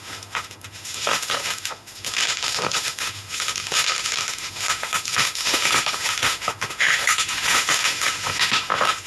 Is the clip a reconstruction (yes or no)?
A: yes